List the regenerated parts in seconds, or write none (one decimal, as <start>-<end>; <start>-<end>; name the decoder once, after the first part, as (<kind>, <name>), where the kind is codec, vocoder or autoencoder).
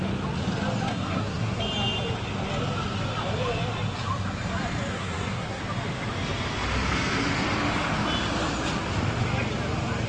0.9-1.6 (codec, SNAC); 4.9-5.6